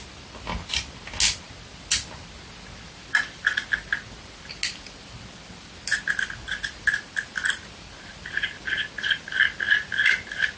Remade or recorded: recorded